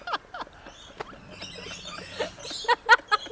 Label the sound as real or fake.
real